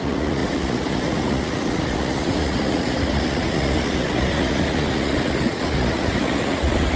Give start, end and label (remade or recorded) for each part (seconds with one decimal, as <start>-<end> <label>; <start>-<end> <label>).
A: 0.0-7.0 remade